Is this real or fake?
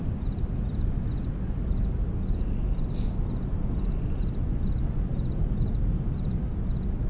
real